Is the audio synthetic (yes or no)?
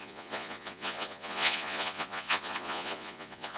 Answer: yes